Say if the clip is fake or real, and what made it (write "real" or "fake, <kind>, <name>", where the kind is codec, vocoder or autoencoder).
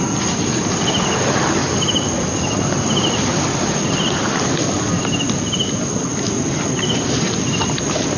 real